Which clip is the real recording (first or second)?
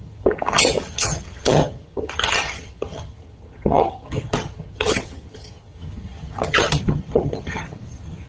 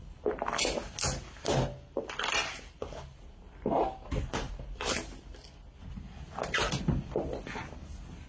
second